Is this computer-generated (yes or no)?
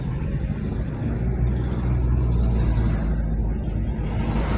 no